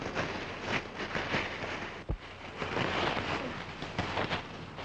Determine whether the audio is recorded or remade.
recorded